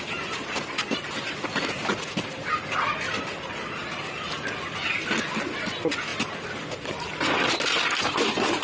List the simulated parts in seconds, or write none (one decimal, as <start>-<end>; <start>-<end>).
none